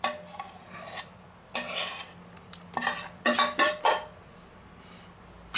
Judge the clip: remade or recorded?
recorded